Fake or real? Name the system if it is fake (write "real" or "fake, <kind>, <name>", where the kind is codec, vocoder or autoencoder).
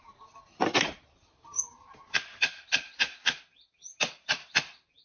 real